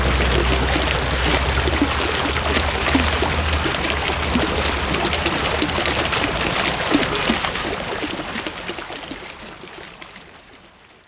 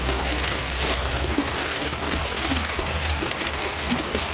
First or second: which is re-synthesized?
second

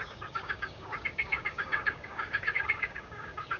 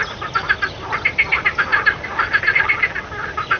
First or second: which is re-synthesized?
first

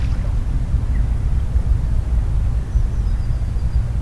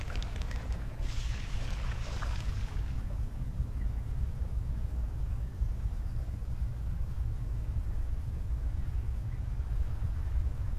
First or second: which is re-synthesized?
second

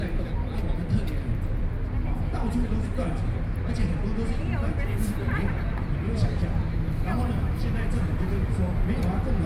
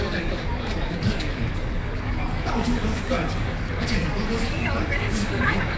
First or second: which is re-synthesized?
second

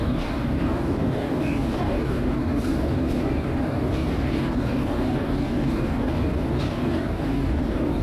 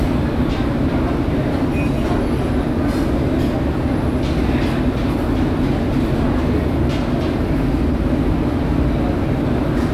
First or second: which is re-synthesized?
first